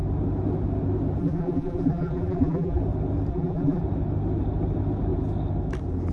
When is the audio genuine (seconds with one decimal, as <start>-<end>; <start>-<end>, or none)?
0.0-1.2; 2.8-3.3; 3.8-6.1